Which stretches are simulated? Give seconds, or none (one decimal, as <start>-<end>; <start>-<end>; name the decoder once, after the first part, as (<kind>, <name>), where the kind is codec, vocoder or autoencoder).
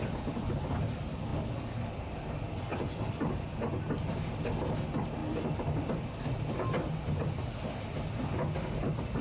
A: 0.0-0.8 (vocoder, BigVGAN v2); 2.7-3.3